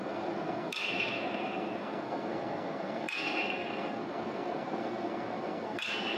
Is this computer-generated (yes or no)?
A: yes